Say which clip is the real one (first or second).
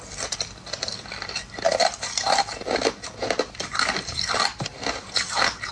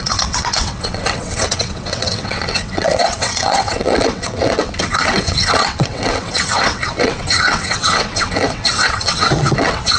first